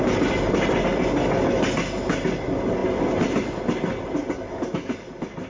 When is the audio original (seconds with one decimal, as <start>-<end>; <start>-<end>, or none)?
0.0-5.5